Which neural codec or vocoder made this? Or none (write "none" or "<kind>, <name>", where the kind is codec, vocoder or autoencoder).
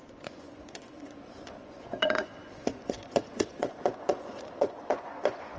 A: vocoder, Vocos